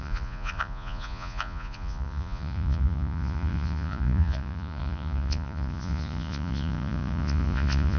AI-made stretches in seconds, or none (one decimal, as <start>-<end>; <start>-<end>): 0.0-8.0